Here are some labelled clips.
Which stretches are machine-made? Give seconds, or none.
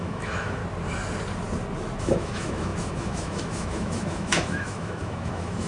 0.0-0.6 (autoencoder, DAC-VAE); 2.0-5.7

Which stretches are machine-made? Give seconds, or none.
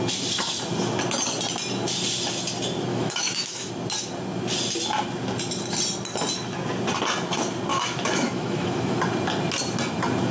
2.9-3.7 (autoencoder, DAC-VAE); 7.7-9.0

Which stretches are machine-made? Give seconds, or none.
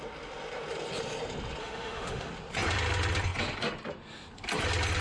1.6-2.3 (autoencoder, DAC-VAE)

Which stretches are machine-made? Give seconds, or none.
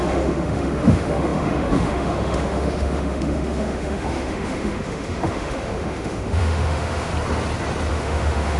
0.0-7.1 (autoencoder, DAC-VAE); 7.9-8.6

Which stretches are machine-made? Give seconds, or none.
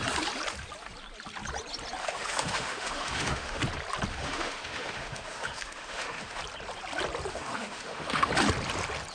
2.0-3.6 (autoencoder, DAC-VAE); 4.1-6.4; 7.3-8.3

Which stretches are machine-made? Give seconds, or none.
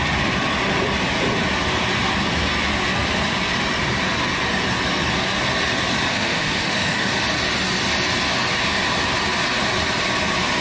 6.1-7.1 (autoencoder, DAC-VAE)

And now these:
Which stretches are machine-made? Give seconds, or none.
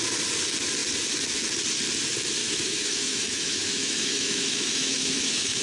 2.4-5.6 (autoencoder, DAC-VAE)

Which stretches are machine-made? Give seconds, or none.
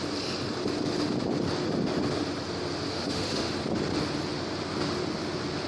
2.9-3.5 (autoencoder, DAC-VAE)